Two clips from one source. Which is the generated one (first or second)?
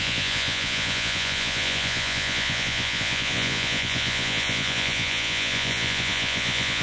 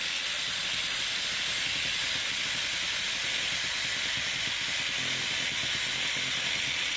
first